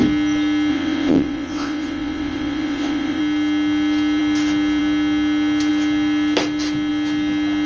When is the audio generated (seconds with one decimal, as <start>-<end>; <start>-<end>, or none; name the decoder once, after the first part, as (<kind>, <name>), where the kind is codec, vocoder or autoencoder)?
0.7-3.2 (vocoder, WaveNeXt)